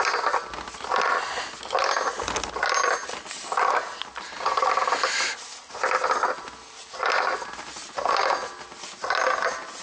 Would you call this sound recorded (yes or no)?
yes